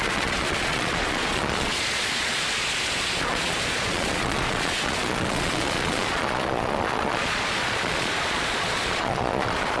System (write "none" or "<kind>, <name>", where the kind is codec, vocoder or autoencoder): vocoder, Vocos